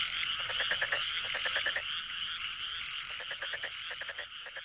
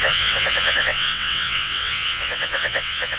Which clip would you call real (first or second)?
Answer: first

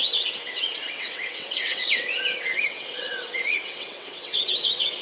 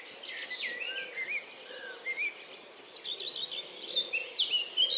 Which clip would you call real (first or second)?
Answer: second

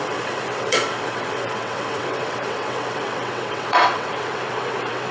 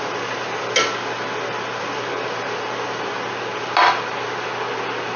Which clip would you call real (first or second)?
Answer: second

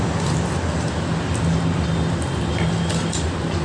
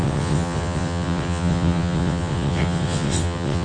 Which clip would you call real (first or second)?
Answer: first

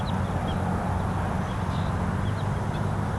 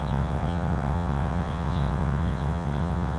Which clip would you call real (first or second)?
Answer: first